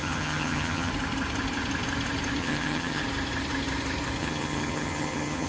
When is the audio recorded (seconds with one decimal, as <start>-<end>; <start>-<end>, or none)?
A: 0.9-2.4; 3.0-4.2